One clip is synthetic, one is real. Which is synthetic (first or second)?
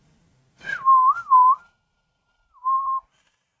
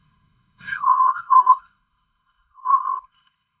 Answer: second